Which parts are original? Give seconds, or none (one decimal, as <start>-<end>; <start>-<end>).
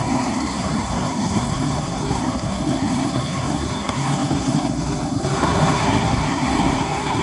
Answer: none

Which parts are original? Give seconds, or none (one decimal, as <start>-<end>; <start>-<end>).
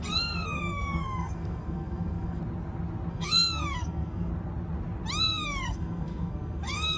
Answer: 2.4-3.1; 4.3-5.2